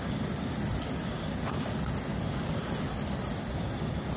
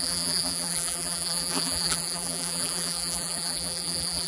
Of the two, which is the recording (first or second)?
first